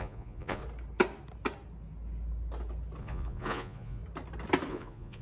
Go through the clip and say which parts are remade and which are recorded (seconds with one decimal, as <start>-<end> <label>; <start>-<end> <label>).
0.0-0.6 remade; 0.6-3.0 recorded; 3.0-4.0 remade; 4.0-4.7 recorded; 4.7-5.2 remade